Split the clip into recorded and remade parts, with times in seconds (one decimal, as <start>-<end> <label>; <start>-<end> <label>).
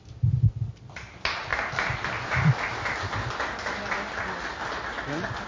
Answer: 0.0-5.5 recorded